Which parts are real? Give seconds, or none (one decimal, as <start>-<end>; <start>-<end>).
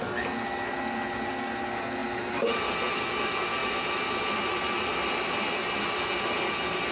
0.0-6.9